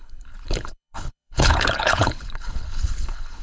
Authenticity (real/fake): fake